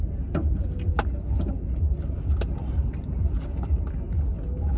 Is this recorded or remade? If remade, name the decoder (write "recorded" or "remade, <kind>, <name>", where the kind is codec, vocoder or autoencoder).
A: recorded